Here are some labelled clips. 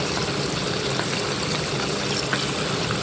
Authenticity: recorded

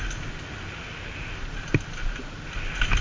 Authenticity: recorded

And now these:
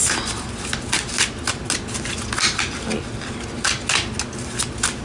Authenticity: recorded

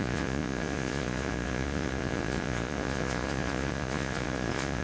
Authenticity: remade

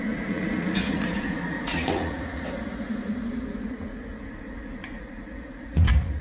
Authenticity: remade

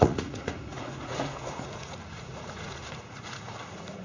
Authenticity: remade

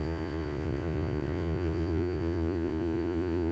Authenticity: remade